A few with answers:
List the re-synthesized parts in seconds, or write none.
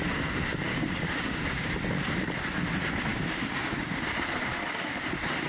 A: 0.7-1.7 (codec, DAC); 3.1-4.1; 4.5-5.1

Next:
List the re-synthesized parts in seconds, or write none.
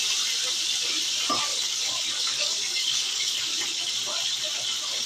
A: 1.5-3.9 (codec, DAC)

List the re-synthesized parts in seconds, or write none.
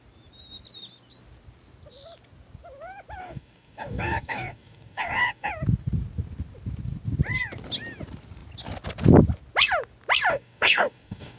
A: 3.2-5.5 (codec, DAC); 10.3-11.4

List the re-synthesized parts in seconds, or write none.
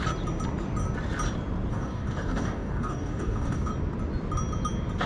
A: 1.7-3.7 (codec, DAC)